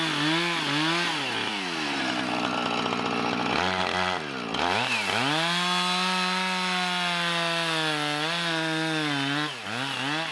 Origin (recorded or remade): recorded